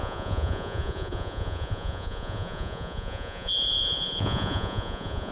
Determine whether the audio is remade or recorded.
remade